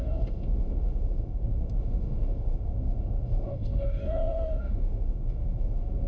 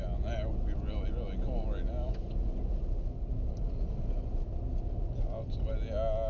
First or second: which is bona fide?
second